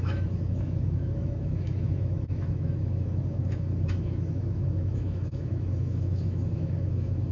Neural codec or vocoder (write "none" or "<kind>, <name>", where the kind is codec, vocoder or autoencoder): autoencoder, DAC-VAE